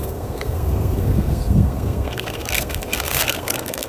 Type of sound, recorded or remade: remade